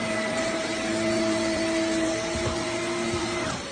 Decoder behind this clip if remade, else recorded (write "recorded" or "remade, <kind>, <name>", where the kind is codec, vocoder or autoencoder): remade, vocoder, BigVGAN v2